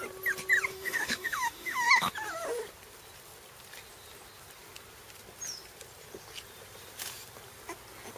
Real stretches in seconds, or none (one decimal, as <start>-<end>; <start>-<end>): 0.0-0.7; 2.1-8.2

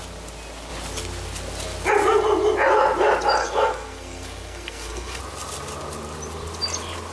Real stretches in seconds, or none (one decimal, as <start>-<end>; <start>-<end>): 0.0-3.4; 5.2-7.1

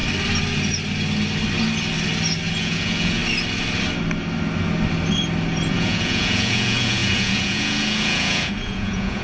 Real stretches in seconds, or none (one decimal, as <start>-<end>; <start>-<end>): 0.0-2.6; 3.2-5.7

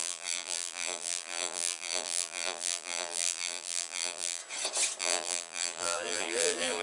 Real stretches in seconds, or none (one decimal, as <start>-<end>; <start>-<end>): 4.4-5.0